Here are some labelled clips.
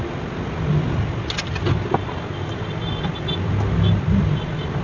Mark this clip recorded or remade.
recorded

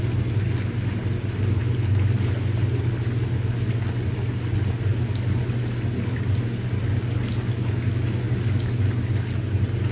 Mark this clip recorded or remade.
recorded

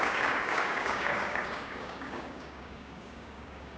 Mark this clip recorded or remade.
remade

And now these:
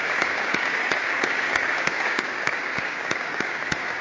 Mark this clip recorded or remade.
remade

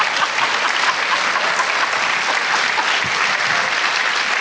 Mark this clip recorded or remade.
recorded